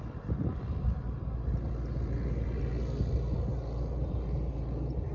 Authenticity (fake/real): real